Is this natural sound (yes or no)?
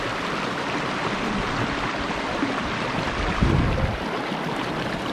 yes